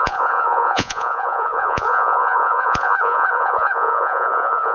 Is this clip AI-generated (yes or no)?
yes